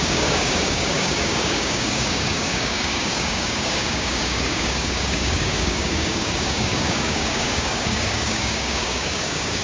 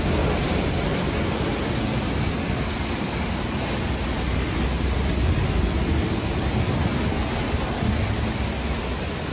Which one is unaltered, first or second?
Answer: second